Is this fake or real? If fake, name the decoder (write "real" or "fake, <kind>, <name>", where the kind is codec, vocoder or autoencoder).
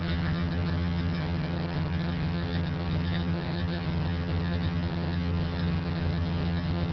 fake, vocoder, HiFi-GAN